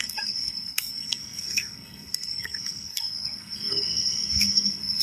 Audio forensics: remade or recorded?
remade